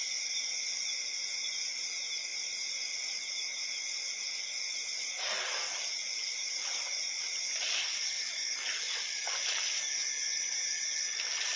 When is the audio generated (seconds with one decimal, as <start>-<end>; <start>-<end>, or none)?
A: 0.0-2.3; 5.2-11.6